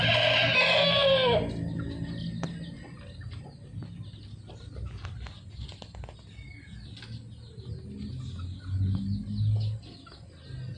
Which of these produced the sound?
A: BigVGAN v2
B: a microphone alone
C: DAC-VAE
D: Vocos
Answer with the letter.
B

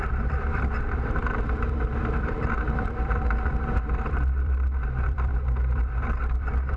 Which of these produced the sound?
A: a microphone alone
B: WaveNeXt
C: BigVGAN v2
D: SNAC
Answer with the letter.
C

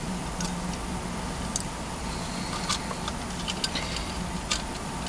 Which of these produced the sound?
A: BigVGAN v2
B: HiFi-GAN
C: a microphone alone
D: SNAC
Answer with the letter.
C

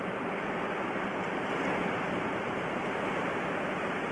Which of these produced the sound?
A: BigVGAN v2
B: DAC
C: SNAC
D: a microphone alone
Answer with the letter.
A